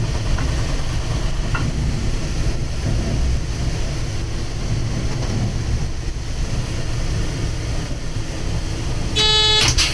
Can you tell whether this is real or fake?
real